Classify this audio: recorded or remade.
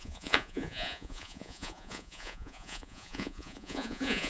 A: remade